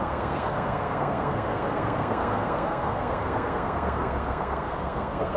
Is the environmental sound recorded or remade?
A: remade